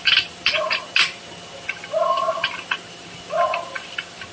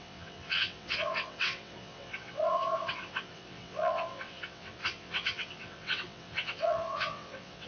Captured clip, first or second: first